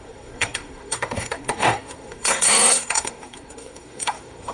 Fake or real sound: fake